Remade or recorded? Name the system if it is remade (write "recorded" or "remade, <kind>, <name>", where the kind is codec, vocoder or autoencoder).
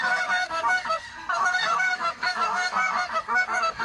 remade, codec, SNAC